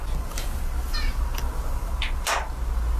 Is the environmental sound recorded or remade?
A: recorded